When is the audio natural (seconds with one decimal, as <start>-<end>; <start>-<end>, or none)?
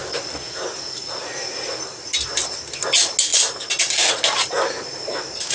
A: 0.0-5.5